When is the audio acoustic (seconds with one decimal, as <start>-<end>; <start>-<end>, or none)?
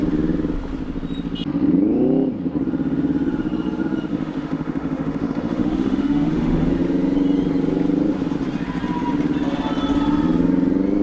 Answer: 0.0-4.1; 6.7-11.0